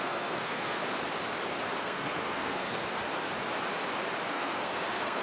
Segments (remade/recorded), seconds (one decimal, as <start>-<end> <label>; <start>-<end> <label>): 0.0-0.8 remade; 0.8-1.8 recorded; 1.8-2.8 remade; 2.8-4.3 recorded; 4.3-5.2 remade